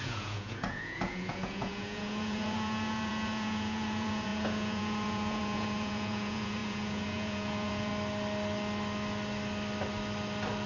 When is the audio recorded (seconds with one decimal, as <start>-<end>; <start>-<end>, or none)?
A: 7.9-10.7